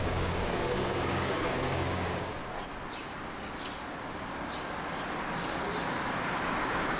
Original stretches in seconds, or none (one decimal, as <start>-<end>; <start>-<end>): 2.4-6.6